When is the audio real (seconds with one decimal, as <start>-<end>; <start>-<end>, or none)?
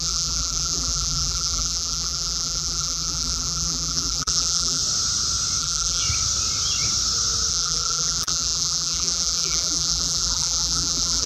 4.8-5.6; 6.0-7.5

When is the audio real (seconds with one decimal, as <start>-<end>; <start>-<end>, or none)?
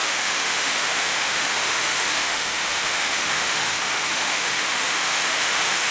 none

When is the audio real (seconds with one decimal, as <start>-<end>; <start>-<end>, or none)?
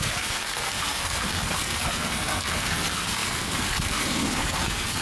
none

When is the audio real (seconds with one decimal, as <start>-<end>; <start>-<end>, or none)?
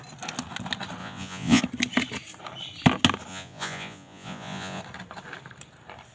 0.0-1.0; 1.6-3.3; 4.8-6.1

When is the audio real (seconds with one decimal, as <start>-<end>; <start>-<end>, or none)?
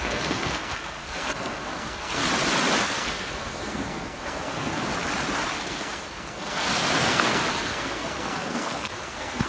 2.2-2.8; 4.8-5.5